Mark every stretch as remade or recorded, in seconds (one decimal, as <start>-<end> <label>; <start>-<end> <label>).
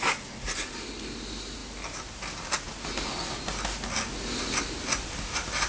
0.0-5.7 recorded